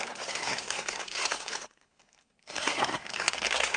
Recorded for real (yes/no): no